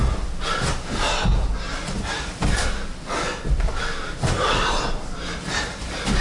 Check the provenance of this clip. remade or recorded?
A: recorded